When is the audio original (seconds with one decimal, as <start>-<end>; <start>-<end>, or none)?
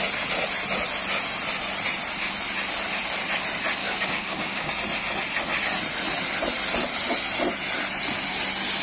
0.0-3.8; 4.7-8.8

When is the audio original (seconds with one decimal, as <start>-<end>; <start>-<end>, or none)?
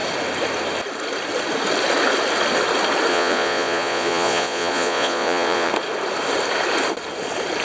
0.0-3.1; 5.7-7.6